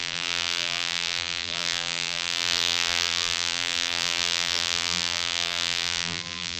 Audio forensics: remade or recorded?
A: remade